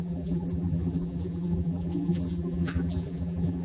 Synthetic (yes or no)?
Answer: yes